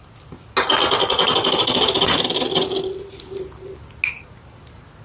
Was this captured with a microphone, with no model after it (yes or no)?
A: yes